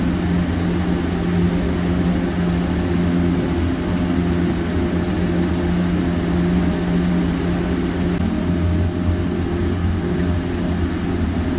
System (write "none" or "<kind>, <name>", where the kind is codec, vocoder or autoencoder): none